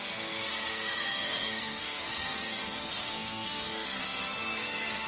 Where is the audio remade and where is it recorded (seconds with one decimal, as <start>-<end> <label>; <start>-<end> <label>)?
0.0-5.1 remade